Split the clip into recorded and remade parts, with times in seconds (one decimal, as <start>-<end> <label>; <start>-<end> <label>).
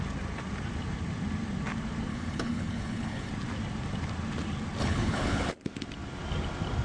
0.0-2.1 recorded; 2.1-3.3 remade; 3.3-4.8 recorded; 4.8-5.5 remade; 5.5-6.8 recorded